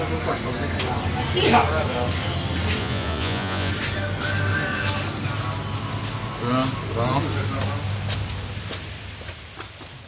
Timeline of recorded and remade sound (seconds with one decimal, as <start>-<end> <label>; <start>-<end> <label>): 0.0-2.8 recorded; 2.8-3.7 remade; 3.7-10.1 recorded